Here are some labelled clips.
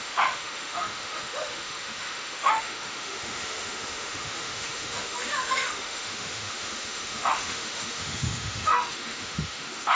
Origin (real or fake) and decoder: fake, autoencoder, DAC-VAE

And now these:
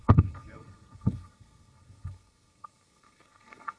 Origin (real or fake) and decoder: fake, codec, SNAC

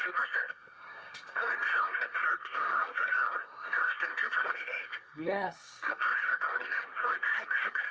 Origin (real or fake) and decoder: fake, codec, SNAC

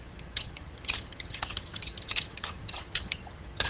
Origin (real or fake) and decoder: fake, vocoder, HiFi-GAN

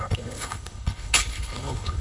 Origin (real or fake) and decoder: fake, codec, HILCodec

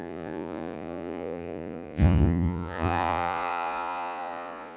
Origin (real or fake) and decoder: fake, vocoder, Vocos